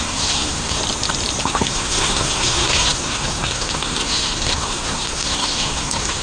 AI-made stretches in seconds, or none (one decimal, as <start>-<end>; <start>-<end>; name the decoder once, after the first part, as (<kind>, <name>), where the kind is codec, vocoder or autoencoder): 0.0-0.8 (codec, SNAC); 1.4-6.2